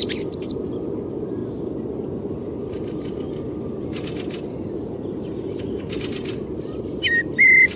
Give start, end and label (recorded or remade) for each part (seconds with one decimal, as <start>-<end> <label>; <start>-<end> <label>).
0.0-1.4 remade; 1.4-5.9 recorded; 5.9-7.8 remade